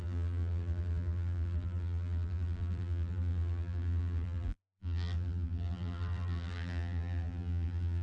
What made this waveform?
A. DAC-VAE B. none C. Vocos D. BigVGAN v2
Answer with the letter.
D